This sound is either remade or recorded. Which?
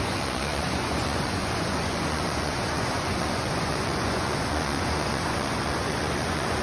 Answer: remade